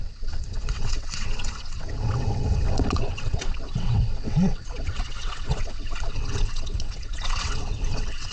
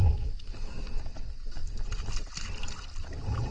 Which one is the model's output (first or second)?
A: first